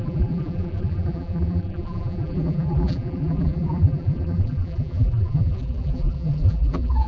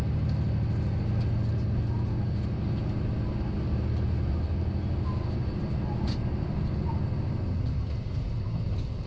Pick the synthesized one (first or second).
first